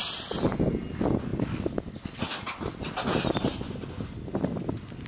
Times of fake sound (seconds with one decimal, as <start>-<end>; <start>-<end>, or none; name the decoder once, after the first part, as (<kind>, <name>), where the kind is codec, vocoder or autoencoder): none